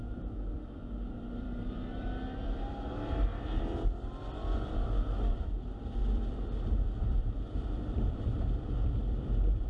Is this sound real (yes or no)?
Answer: no